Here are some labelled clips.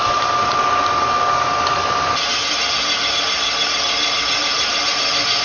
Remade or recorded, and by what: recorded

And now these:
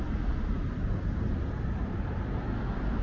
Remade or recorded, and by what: recorded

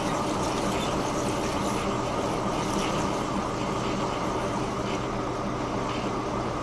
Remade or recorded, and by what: recorded